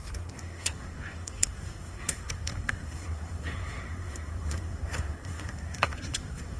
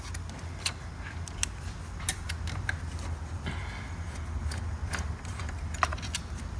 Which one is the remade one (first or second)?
first